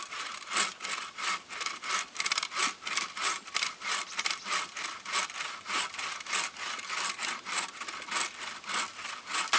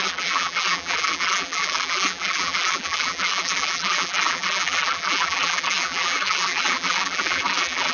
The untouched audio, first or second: first